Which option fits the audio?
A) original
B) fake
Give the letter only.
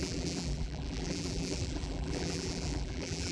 B